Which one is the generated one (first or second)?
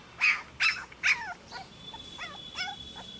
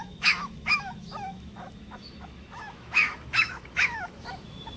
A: second